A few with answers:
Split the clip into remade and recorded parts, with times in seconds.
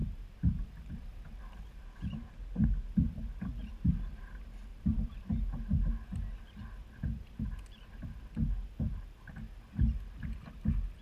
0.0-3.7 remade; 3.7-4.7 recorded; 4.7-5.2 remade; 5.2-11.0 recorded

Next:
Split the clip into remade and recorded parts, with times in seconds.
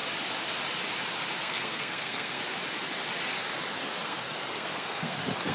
0.0-1.4 recorded; 1.4-2.4 remade; 2.4-4.0 recorded; 4.0-5.5 remade